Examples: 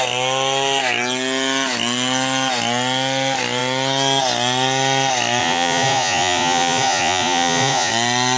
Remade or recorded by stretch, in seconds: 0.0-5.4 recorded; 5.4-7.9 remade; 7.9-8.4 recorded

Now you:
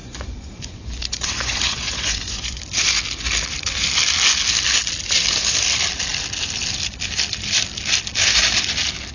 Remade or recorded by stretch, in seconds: 0.0-2.6 remade; 2.6-9.1 recorded